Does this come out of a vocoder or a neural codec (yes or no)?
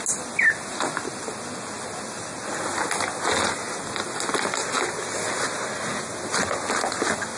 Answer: no